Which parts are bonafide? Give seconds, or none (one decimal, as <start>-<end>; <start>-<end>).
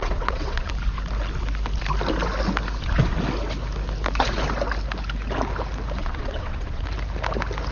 0.7-6.0; 6.8-7.7